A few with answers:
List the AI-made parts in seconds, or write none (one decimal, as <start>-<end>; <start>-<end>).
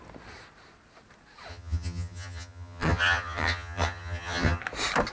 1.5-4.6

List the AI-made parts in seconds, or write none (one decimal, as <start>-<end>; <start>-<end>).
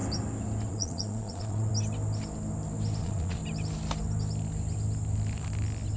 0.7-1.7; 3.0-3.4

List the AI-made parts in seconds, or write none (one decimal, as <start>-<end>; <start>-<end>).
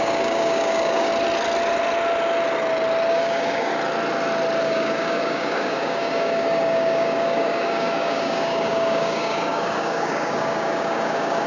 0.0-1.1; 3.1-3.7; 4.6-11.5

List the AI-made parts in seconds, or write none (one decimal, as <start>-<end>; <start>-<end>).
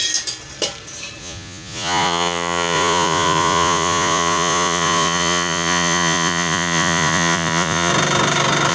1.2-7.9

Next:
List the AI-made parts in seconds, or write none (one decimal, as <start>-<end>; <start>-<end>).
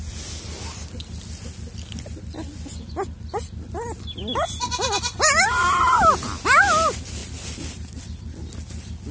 none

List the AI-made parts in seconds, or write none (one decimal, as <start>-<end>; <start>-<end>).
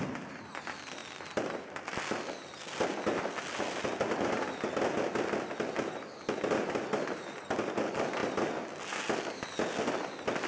none